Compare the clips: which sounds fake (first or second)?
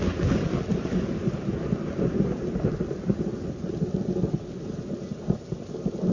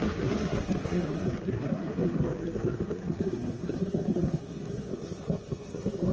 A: second